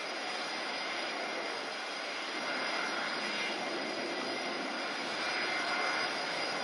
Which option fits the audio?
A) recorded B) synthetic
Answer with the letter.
A